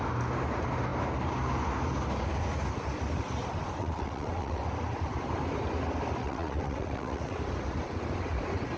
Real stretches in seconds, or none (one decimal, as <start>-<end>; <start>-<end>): 0.0-3.8; 4.6-6.2; 7.4-8.8